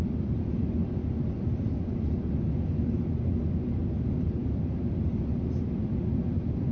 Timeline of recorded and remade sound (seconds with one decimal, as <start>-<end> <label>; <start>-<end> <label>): 0.0-6.7 recorded